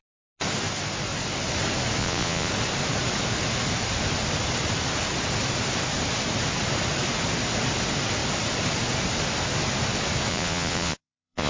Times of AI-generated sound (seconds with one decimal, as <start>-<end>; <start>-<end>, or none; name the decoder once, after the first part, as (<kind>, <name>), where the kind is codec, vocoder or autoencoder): 2.0-2.5 (vocoder, Vocos); 10.3-11.5